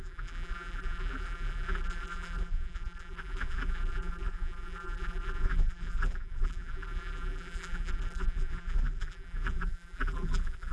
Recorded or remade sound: remade